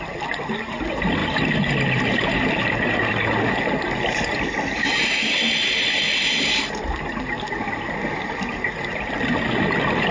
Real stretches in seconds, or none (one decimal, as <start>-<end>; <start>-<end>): 0.0-10.1